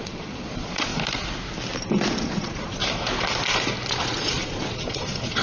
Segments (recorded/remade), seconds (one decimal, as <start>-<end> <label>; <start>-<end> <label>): 0.0-0.9 remade; 0.9-2.2 recorded; 2.2-2.8 remade; 2.8-3.9 recorded; 3.9-5.4 remade